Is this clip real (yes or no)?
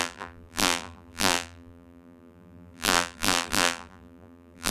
no